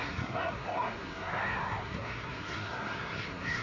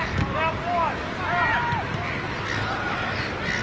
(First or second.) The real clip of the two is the second